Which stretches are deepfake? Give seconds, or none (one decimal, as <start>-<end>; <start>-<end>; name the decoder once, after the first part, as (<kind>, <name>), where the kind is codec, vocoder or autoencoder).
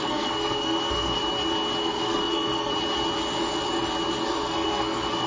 0.0-1.2 (codec, SNAC); 1.8-2.7; 4.2-5.3